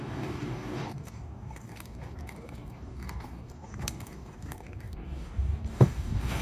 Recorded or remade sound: remade